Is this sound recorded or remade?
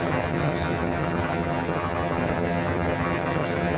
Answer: remade